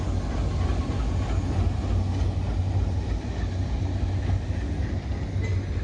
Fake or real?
real